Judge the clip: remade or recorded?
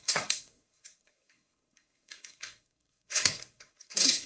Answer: remade